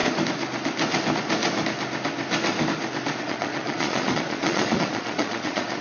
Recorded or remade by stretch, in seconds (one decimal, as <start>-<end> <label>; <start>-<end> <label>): 0.0-3.2 recorded; 3.2-5.8 remade

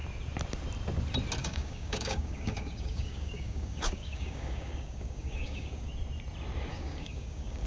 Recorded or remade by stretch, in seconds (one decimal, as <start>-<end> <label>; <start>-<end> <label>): 0.0-1.4 recorded; 1.4-5.9 remade; 5.9-6.7 recorded; 6.7-7.7 remade